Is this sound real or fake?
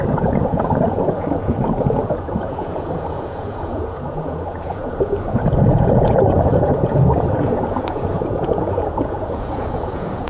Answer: fake